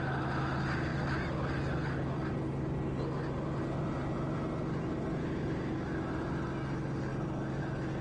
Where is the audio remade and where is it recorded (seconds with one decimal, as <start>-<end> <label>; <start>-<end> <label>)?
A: 0.0-8.0 recorded